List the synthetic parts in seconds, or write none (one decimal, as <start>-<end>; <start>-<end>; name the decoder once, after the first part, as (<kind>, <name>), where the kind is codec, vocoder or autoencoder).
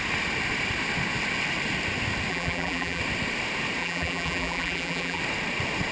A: 2.3-3.0 (vocoder, BigVGAN v2); 3.8-5.2